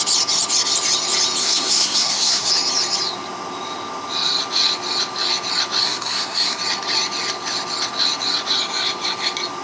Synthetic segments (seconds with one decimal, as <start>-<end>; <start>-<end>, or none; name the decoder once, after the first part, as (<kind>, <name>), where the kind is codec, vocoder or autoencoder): 1.4-2.5 (codec, SNAC); 5.8-6.6